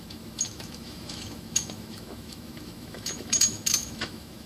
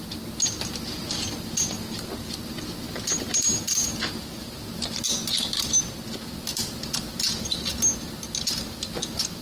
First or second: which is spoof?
first